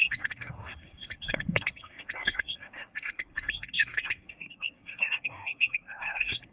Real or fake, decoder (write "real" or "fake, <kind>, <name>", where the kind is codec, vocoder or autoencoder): fake, codec, SNAC